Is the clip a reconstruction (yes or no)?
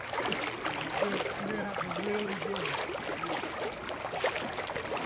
no